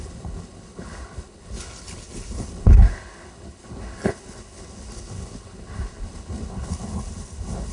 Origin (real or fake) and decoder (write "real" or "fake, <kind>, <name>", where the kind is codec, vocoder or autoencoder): fake, codec, HILCodec